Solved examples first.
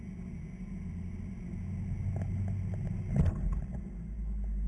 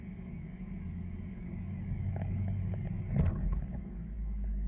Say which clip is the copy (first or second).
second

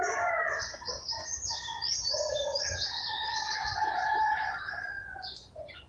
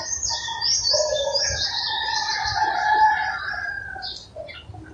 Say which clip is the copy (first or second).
first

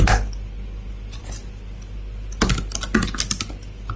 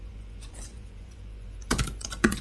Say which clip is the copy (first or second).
second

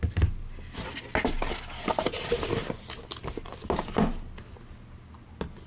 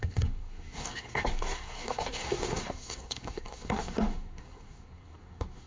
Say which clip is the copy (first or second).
second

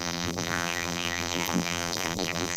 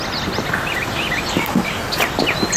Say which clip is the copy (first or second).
first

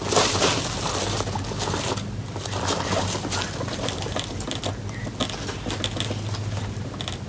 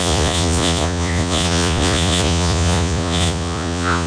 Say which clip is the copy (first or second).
second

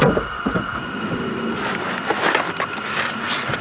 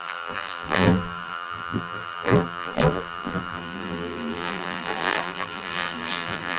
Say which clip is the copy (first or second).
second